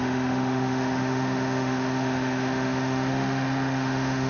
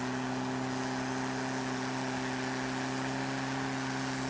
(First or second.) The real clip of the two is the second